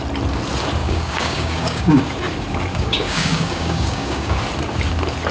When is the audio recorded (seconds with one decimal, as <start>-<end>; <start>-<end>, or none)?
0.0-0.8; 2.0-2.7; 4.4-5.3